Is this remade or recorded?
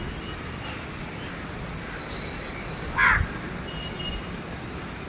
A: recorded